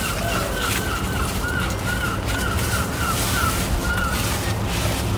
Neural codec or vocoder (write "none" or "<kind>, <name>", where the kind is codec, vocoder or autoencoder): none